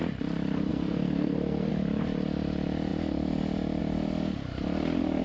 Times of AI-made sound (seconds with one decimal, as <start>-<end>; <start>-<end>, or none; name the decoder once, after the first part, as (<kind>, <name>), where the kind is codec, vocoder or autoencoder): 0.7-1.7 (codec, SNAC)